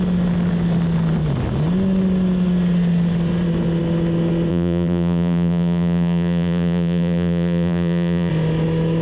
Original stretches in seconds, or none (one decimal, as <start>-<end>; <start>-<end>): 0.0-4.5; 8.3-9.0

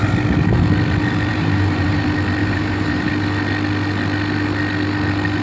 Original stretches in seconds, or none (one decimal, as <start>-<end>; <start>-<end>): 0.0-1.3; 2.0-2.4; 3.1-5.4

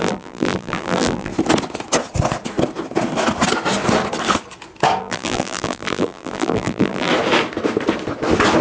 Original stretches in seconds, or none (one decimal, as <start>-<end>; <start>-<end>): 1.3-5.0; 7.1-8.6

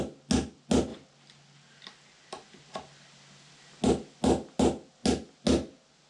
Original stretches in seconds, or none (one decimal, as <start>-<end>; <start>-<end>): 0.0-6.1

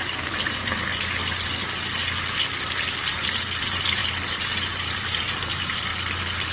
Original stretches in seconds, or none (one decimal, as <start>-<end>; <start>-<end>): 0.9-3.6; 4.0-4.7; 5.9-6.5